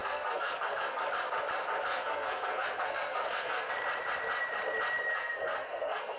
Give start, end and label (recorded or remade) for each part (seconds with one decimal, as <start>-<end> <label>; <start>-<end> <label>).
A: 0.0-1.0 remade; 1.0-1.9 recorded; 1.9-3.7 remade; 3.7-5.1 recorded; 5.1-6.2 remade